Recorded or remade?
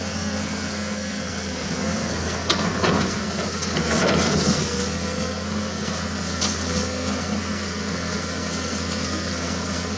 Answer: remade